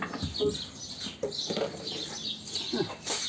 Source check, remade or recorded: recorded